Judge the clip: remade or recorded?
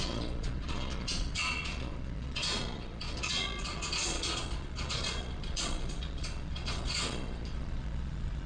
remade